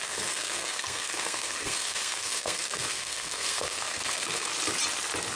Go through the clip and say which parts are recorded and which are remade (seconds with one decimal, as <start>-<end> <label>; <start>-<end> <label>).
0.0-4.5 remade; 4.5-5.4 recorded